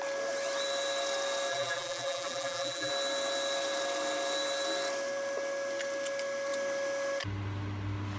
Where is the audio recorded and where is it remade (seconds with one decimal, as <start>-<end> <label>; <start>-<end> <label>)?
0.0-1.5 recorded; 1.5-2.9 remade; 2.9-8.2 recorded